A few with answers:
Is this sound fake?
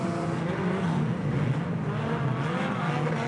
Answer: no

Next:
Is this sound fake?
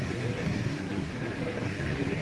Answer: yes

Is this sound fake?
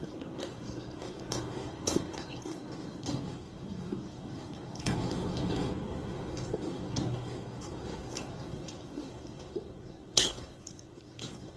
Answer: yes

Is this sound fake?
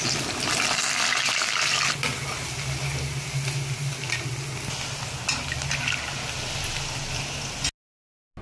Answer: no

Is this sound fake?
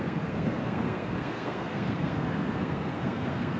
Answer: yes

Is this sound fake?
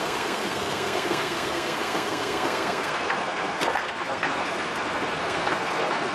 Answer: yes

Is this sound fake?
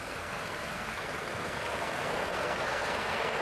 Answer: yes